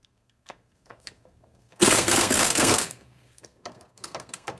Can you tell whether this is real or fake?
fake